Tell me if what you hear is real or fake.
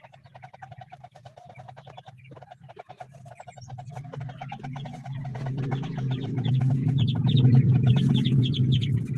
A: fake